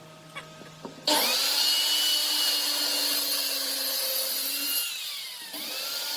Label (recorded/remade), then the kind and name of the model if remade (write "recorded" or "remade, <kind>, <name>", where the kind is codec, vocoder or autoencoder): recorded